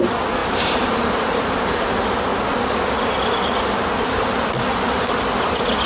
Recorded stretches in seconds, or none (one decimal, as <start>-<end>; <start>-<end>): 0.0-0.4; 1.9-5.9